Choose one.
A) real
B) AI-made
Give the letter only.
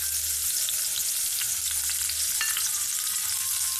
A